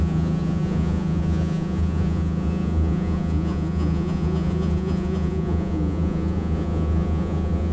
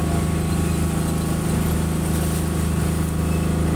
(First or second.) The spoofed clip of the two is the first